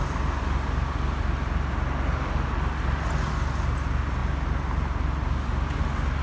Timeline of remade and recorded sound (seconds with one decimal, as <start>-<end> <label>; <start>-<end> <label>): 0.0-6.2 recorded